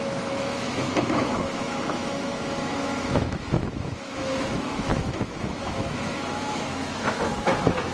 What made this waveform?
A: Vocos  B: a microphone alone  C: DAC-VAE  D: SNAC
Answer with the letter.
C